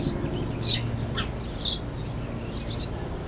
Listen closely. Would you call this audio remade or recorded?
recorded